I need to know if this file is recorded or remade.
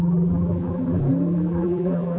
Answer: remade